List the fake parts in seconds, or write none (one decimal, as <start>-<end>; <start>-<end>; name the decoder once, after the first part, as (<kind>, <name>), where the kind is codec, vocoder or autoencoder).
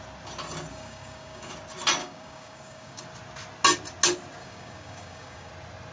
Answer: 0.7-1.5 (codec, DAC); 2.0-3.0; 4.4-5.5